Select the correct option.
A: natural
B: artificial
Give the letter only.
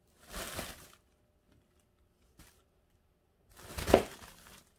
A